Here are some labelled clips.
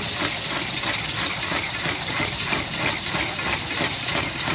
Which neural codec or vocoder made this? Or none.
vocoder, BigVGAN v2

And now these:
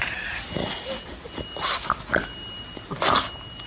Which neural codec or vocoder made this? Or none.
none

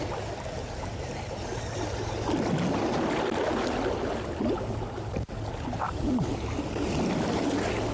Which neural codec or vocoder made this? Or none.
none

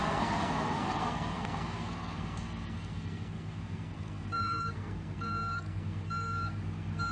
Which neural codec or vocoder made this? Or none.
codec, SNAC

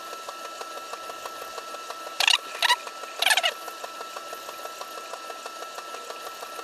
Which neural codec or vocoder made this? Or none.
none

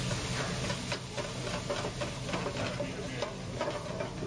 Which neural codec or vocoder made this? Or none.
none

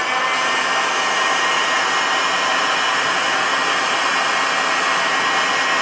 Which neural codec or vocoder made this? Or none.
none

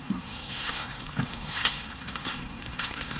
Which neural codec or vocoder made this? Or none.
codec, SNAC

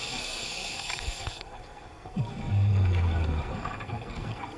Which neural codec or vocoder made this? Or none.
codec, SNAC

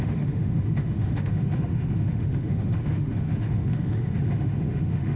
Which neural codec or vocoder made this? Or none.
autoencoder, DAC-VAE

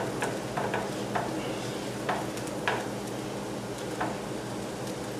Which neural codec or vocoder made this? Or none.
none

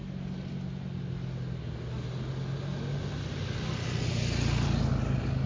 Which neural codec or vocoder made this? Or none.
none